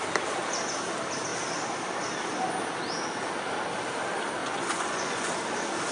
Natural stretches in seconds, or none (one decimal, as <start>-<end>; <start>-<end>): 0.0-4.4; 5.3-5.9